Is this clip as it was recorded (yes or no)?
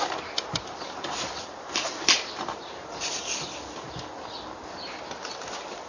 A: yes